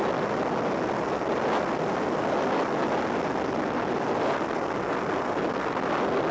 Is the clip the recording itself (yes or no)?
yes